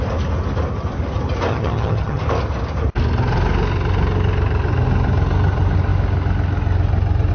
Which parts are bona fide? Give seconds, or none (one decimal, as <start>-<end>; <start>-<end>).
0.0-1.5; 2.2-7.3